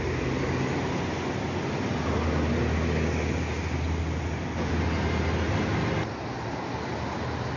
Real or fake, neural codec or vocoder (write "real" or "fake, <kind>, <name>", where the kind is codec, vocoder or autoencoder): real